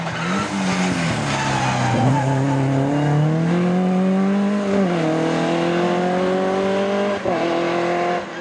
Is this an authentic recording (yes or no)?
yes